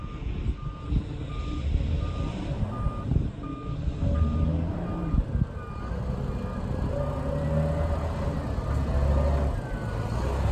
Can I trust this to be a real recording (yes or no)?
yes